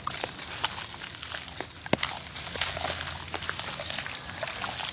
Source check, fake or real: real